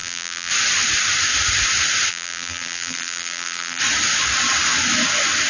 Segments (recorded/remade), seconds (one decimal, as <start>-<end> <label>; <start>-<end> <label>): 0.0-0.5 remade; 0.5-2.1 recorded; 2.1-3.8 remade; 3.8-5.5 recorded